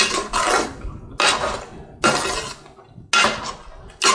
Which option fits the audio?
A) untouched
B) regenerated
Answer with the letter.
A